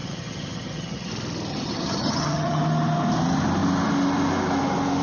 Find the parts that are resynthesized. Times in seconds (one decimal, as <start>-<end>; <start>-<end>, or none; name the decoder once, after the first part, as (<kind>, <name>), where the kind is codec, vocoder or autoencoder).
0.0-1.1 (vocoder, HiFi-GAN); 1.5-2.6

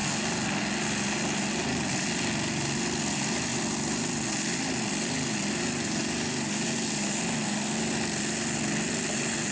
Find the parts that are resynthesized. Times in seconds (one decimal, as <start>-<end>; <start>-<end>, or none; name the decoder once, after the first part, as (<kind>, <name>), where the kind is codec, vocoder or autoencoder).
none

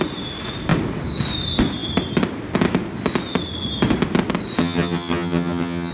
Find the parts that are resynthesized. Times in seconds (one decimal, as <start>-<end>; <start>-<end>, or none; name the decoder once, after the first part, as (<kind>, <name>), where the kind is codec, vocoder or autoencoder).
4.6-5.9 (vocoder, HiFi-GAN)

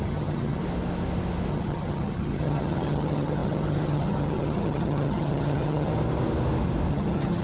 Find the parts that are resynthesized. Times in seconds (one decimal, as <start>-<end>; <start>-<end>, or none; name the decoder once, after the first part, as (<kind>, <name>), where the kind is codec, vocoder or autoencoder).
0.0-0.6 (vocoder, HiFi-GAN); 1.5-5.9; 6.9-7.4

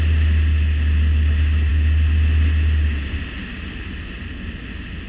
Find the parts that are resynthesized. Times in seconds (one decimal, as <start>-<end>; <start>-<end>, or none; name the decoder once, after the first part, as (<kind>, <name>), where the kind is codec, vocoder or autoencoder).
none